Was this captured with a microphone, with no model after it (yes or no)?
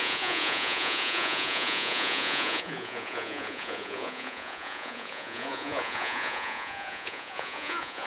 no